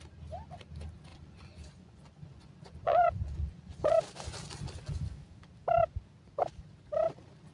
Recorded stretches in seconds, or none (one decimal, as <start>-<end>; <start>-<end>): 0.0-1.1; 4.0-7.5